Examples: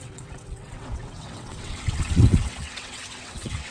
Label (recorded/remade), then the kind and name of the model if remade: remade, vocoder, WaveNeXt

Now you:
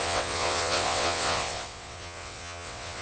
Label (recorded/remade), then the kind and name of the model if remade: remade, vocoder, WaveNeXt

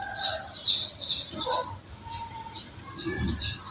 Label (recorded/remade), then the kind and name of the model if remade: recorded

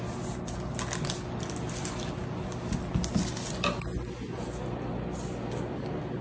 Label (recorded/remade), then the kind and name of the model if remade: recorded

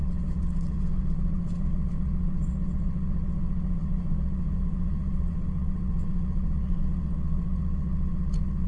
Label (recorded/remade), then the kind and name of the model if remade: remade, vocoder, WaveNeXt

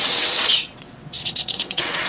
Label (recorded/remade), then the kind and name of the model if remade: remade, vocoder, WaveNeXt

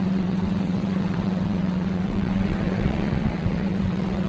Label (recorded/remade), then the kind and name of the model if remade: remade, vocoder, WaveNeXt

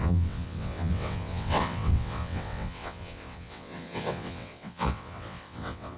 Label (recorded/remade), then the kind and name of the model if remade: remade, vocoder, WaveNeXt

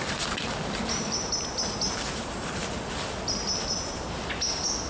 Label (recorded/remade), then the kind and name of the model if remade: recorded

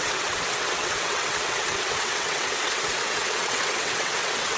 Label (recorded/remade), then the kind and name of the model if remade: remade, vocoder, WaveNeXt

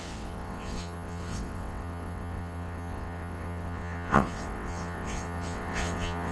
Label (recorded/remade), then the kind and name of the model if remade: remade, vocoder, WaveNeXt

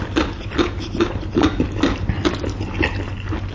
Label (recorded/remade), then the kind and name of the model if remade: recorded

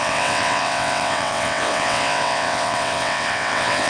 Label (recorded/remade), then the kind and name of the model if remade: remade, vocoder, WaveNeXt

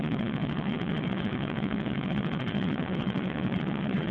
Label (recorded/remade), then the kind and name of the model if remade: remade, vocoder, WaveNeXt